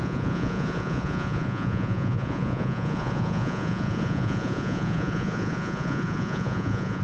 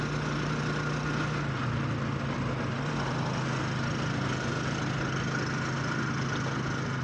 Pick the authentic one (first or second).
second